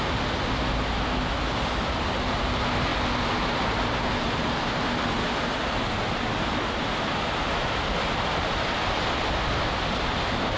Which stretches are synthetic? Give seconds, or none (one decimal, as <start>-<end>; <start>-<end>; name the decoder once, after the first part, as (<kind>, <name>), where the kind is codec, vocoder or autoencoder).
none